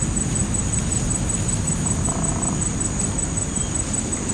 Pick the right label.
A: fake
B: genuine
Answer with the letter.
B